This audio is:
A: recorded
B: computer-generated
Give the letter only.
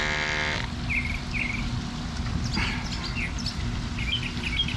A